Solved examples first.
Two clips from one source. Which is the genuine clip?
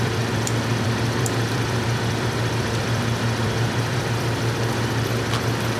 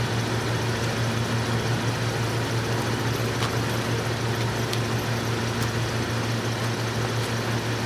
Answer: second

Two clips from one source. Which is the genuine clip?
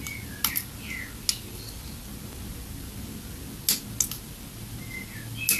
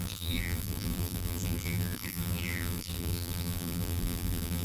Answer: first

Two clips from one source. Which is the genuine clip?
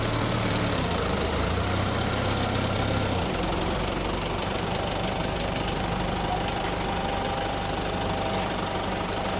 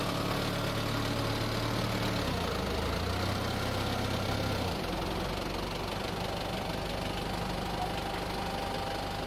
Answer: second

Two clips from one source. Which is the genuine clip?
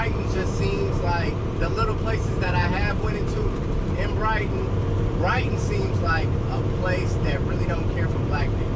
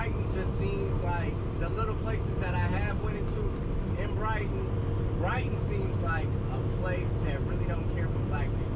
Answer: second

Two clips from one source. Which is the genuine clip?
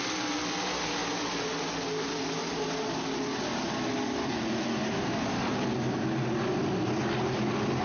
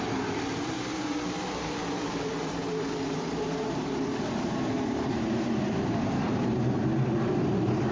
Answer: first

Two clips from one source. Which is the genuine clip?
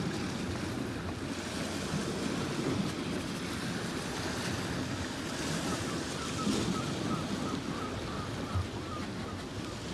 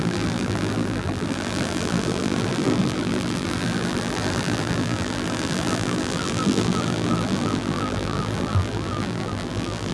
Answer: first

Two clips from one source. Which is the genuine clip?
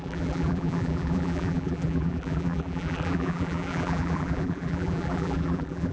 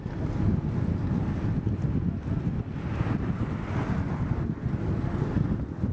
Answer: second